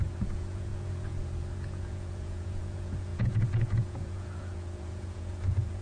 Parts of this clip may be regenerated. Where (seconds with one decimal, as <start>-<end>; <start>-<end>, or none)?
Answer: 0.0-5.8